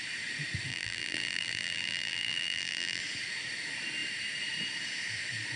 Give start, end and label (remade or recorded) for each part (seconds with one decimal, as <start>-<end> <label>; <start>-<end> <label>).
0.0-0.7 recorded; 0.7-3.0 remade; 3.0-5.6 recorded

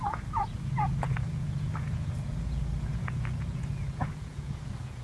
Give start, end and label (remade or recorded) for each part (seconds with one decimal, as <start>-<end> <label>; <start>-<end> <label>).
0.0-5.0 remade